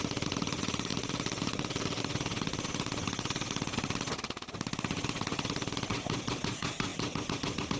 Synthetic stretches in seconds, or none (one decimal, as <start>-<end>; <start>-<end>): 0.9-2.0

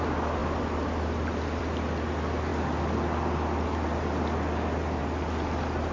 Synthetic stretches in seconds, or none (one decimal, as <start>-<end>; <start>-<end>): none

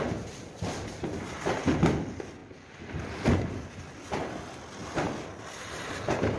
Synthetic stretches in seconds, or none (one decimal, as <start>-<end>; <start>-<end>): none

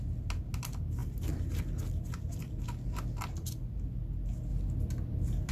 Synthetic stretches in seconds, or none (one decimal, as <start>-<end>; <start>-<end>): none

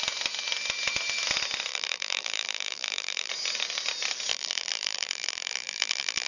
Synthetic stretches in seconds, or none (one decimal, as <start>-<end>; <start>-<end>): 1.7-3.3; 4.3-6.3

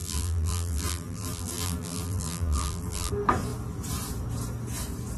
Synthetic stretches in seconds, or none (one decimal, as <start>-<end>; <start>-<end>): 0.0-3.1